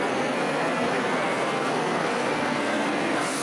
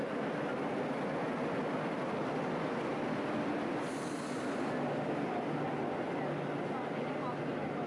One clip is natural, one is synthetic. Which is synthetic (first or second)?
first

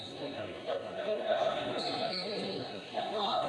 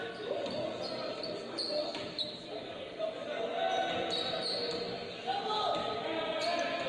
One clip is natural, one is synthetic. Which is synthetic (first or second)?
first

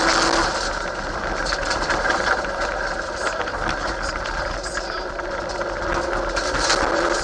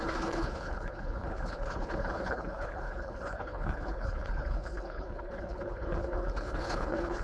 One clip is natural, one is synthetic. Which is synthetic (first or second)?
second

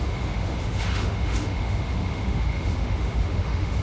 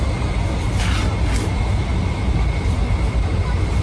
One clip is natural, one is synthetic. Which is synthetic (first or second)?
first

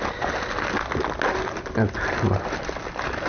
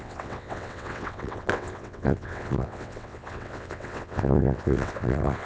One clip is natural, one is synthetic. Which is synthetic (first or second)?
second